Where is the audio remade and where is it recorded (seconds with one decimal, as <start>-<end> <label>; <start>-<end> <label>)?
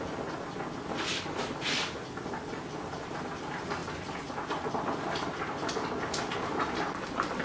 0.0-7.4 recorded